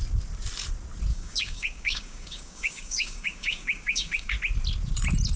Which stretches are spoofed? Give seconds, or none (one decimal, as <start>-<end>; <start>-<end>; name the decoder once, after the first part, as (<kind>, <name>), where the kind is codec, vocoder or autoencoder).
1.1-4.3 (codec, DAC)